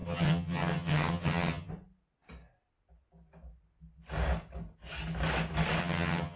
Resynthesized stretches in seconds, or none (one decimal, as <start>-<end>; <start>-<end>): 0.0-1.7; 5.8-6.4